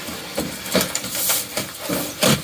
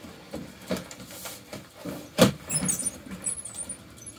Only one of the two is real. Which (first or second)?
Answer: second